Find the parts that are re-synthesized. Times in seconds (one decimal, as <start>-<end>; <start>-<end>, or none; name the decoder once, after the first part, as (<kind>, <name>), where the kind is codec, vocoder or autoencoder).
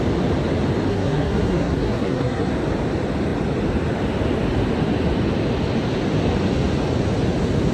0.9-2.5 (codec, SNAC)